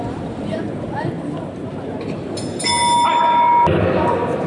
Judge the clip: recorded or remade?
recorded